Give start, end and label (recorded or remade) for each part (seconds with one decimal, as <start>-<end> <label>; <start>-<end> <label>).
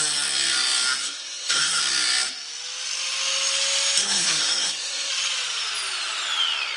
0.0-1.0 recorded; 1.0-1.8 remade; 1.8-4.0 recorded; 4.0-5.1 remade; 5.1-6.8 recorded